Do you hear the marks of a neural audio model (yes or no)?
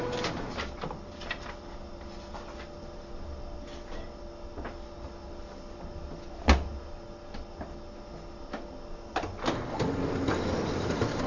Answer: no